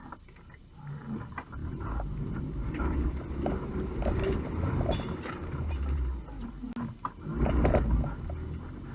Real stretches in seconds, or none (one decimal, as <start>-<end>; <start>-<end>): 0.9-1.6; 6.5-8.9